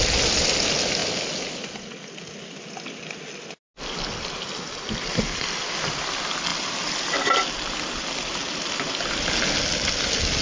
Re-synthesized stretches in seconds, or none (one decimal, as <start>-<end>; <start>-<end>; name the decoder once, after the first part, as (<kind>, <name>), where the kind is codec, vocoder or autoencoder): none